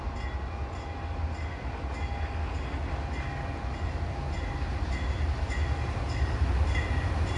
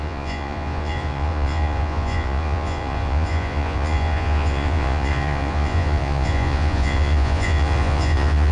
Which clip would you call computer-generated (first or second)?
second